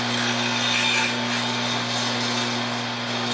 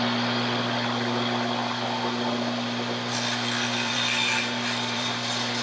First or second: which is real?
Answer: first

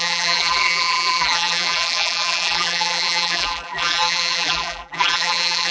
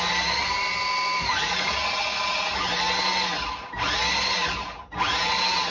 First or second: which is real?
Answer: second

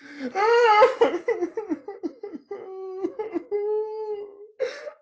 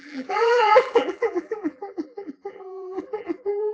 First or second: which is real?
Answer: first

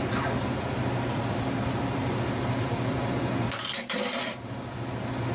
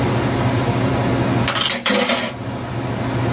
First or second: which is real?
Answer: second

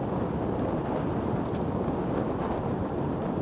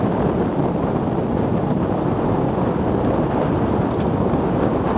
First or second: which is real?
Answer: first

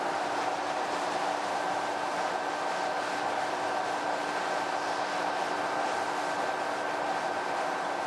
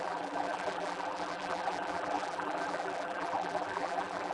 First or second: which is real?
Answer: first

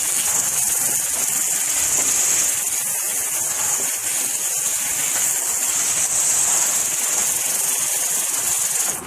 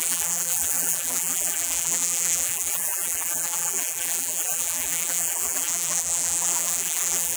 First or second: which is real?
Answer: first